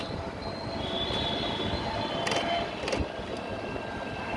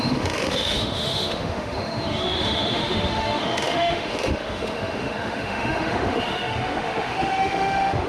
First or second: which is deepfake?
second